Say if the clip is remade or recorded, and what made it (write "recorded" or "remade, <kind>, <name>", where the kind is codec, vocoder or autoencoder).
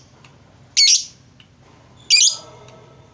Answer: recorded